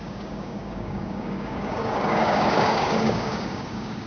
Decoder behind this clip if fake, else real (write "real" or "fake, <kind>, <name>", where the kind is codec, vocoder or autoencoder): fake, codec, DAC